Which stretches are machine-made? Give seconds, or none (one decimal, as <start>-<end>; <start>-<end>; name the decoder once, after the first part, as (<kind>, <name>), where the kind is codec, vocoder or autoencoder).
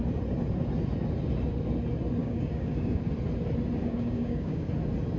2.2-3.0 (codec, DAC); 3.8-4.7